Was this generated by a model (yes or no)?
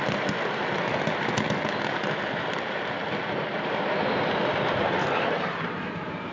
no